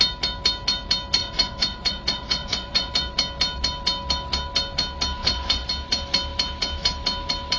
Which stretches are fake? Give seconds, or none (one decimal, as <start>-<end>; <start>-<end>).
1.2-2.9; 5.2-5.7